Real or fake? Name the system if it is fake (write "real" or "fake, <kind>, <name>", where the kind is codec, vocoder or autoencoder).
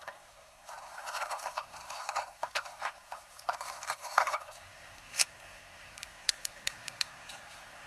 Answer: fake, codec, SNAC